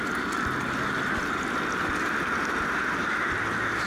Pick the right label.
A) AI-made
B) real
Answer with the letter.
B